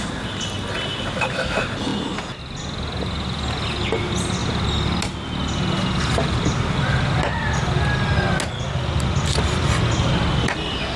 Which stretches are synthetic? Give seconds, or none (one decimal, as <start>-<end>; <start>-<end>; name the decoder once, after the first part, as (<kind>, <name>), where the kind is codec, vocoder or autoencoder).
none